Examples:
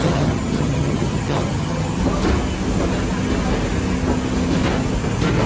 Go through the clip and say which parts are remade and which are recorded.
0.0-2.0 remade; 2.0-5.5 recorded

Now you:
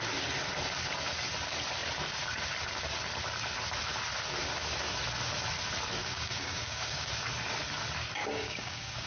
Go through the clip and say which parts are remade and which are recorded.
0.0-6.0 recorded; 6.0-7.1 remade; 7.1-8.2 recorded; 8.2-9.1 remade

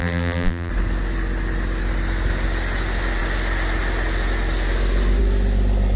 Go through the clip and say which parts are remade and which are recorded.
0.0-0.7 remade; 0.7-6.0 recorded

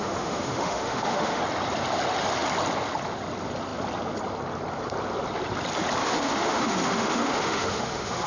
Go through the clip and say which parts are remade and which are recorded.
0.0-1.4 remade; 1.4-6.0 recorded; 6.0-8.3 remade